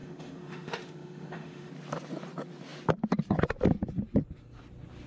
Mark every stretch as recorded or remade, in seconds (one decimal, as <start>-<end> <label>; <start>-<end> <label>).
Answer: 0.0-1.7 remade; 1.7-5.1 recorded